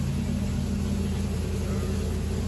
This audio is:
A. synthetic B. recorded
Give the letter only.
B